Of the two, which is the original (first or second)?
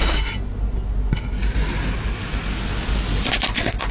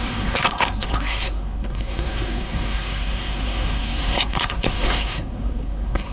first